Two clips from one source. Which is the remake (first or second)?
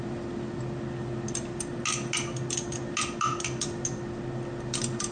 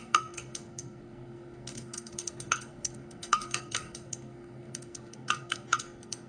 second